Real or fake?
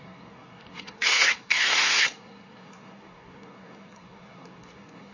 fake